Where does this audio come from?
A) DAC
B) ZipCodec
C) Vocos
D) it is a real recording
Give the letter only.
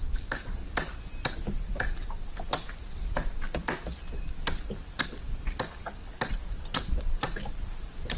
D